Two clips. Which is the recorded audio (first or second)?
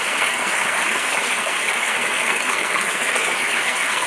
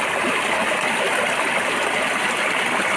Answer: second